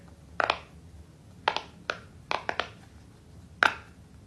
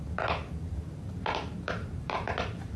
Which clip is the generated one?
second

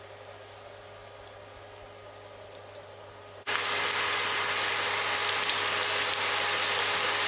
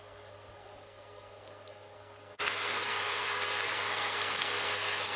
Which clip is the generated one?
second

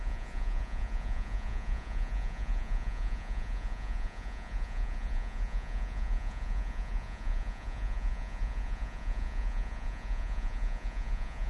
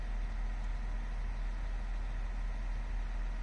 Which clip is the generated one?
first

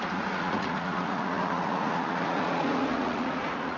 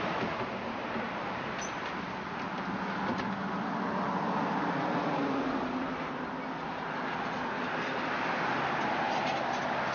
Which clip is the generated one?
first